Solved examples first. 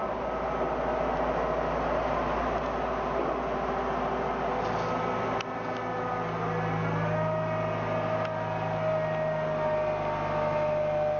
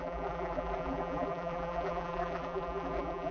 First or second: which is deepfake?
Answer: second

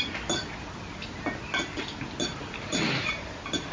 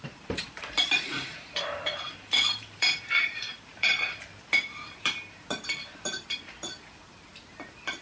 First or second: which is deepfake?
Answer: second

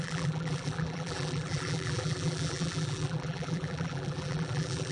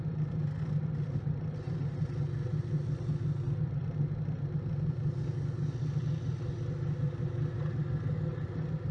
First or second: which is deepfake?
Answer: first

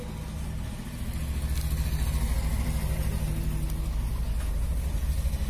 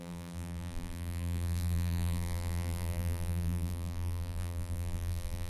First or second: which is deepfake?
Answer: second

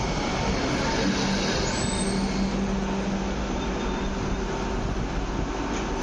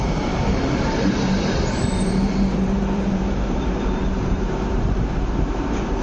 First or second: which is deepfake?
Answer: second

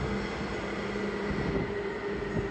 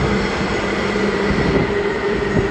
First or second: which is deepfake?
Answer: second